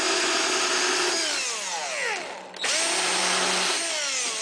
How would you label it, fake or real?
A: real